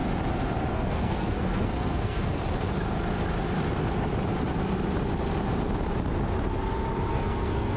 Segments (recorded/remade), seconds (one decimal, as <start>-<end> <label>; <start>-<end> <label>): 0.0-0.7 recorded; 0.7-2.4 remade; 2.4-7.1 recorded; 7.1-7.8 remade